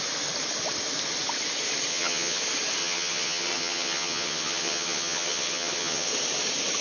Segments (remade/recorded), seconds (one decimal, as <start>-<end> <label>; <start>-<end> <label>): 0.0-1.9 recorded; 1.9-2.4 remade; 2.4-2.8 recorded; 2.8-6.1 remade; 6.1-6.8 recorded